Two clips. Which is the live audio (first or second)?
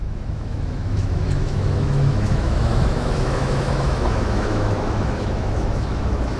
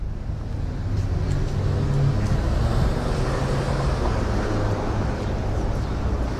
second